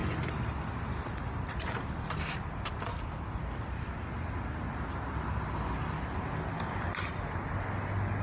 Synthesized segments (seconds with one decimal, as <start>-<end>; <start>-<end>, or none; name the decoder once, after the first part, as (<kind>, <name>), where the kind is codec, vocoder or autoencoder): none